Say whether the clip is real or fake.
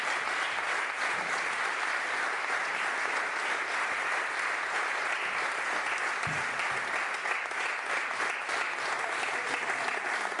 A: real